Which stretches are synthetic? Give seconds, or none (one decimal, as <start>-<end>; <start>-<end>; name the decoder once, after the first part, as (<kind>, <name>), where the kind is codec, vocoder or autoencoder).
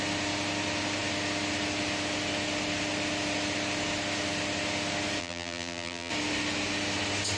5.2-6.1 (vocoder, BigVGAN v2)